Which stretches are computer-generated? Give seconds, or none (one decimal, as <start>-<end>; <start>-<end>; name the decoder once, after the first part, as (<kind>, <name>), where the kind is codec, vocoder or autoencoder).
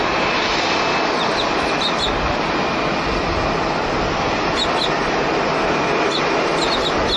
none